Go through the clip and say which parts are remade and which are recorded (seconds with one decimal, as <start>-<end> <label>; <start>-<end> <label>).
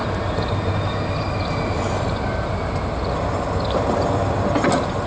0.0-5.1 recorded